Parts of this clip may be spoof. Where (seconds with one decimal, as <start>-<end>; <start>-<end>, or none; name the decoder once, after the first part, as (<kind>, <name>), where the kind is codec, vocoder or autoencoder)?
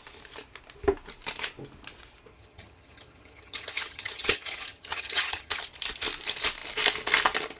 2.3-5.6 (vocoder, HiFi-GAN)